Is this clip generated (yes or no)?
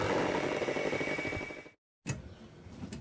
no